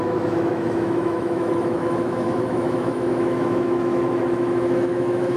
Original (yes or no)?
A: no